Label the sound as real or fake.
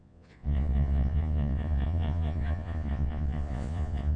fake